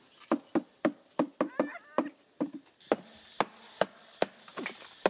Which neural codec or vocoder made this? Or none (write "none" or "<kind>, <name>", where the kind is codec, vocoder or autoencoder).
none